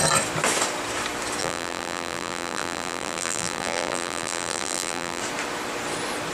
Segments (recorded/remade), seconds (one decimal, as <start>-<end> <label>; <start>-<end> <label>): 0.0-1.4 recorded; 1.4-5.2 remade; 5.2-6.3 recorded